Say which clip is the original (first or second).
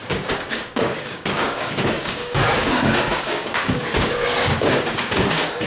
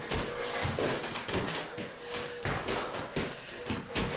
second